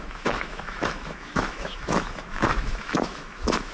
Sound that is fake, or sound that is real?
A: fake